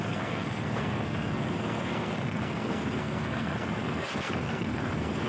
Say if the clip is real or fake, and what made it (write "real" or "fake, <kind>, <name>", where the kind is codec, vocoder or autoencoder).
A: fake, codec, SNAC